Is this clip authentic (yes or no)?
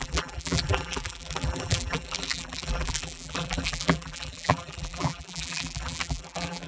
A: no